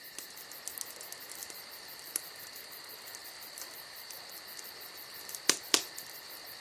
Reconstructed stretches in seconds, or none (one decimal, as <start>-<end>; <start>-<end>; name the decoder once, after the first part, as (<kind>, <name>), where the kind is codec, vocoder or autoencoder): 1.4-2.4 (vocoder, BigVGAN v2); 3.2-6.6